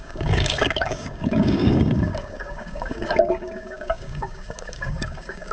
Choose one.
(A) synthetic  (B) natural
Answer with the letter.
A